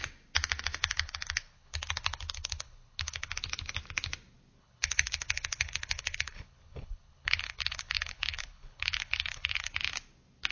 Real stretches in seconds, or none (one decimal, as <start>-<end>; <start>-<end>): 0.0-0.8; 3.4-4.6; 9.7-10.5